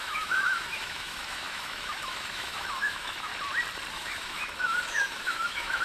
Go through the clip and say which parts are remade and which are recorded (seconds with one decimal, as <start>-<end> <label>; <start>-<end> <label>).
0.0-3.3 remade; 3.3-3.9 recorded; 3.9-5.8 remade